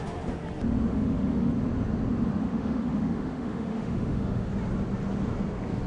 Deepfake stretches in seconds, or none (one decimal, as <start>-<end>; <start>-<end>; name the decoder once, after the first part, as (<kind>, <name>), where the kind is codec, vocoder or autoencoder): 0.9-1.5 (autoencoder, DAC-VAE); 2.4-4.5